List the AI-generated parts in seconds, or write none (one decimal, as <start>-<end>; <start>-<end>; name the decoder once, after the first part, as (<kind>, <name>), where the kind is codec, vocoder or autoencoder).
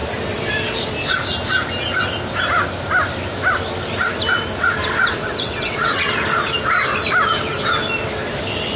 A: 5.1-6.1 (vocoder, WaveNeXt)